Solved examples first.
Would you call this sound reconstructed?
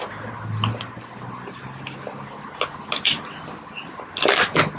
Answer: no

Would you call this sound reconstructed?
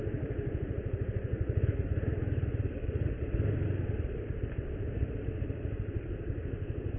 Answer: yes